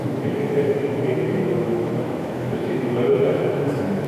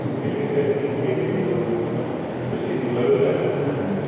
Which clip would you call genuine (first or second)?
second